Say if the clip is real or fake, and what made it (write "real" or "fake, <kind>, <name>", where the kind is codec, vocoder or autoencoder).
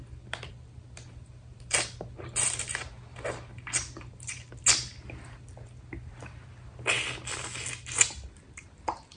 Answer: real